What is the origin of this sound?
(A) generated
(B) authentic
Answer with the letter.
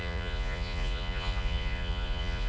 A